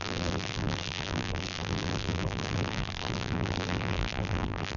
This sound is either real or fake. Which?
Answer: fake